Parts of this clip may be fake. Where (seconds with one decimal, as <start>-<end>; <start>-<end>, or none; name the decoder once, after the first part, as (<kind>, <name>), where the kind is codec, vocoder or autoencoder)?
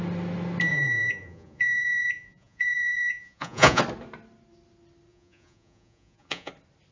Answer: 0.7-3.8 (vocoder, Vocos); 5.1-6.5